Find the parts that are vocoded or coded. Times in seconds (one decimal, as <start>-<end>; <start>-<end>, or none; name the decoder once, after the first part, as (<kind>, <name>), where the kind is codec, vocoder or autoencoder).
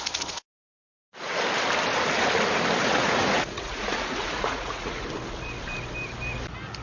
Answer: 0.5-1.4 (vocoder, Vocos); 2.8-5.0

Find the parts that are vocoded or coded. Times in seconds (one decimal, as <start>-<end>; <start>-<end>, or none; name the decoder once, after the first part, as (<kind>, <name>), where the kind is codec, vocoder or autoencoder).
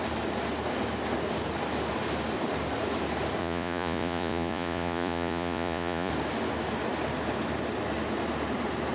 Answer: 3.4-6.1 (vocoder, Vocos)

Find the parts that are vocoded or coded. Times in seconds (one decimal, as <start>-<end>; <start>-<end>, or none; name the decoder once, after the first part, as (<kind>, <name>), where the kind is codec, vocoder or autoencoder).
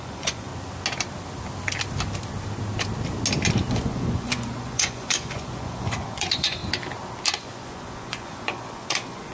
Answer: 0.0-0.5 (vocoder, Vocos); 3.7-6.6; 7.4-9.3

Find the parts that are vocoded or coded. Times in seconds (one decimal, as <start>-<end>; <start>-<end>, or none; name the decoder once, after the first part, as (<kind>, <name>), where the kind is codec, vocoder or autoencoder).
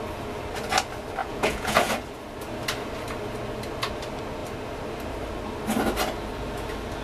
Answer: 1.2-1.9 (vocoder, Vocos)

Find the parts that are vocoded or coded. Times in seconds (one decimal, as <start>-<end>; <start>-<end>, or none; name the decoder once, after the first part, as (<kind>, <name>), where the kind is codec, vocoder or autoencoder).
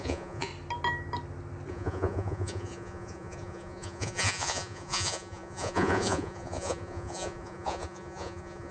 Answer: 0.0-0.5 (vocoder, Vocos); 1.7-8.7